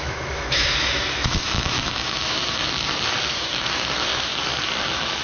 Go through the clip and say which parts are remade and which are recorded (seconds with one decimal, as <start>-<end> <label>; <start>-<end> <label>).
0.0-2.4 remade; 2.4-3.2 recorded; 3.2-4.3 remade; 4.3-4.8 recorded; 4.8-5.2 remade